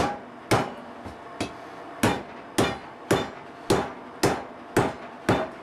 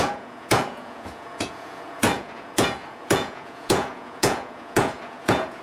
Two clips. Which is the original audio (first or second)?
first